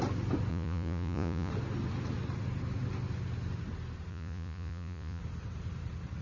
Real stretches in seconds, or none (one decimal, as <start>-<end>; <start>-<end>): 0.0-0.5; 1.5-4.1; 5.2-6.2